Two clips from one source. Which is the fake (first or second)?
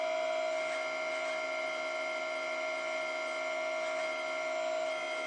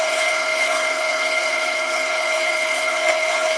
second